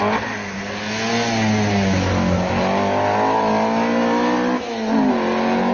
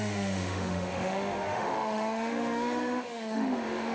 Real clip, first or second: first